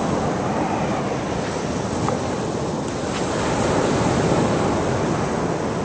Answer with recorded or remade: recorded